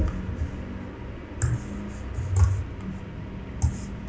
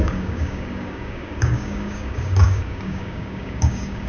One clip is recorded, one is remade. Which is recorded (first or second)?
first